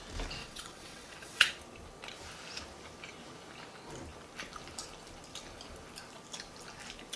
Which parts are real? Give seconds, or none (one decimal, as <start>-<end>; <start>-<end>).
0.0-0.4; 1.5-7.2